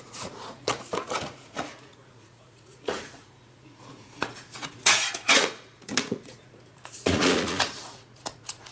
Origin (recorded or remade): remade